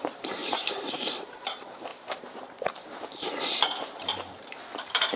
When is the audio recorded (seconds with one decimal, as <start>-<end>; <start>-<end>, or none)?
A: none